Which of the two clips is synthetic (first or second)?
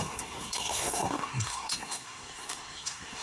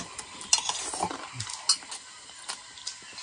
first